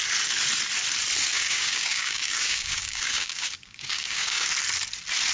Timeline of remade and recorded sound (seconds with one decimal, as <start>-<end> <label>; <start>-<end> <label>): 0.0-1.3 recorded; 1.3-4.5 remade; 4.5-5.3 recorded